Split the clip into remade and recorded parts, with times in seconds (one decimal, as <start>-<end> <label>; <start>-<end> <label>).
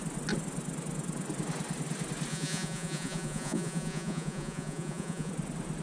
0.0-2.3 recorded; 2.3-5.3 remade; 5.3-5.8 recorded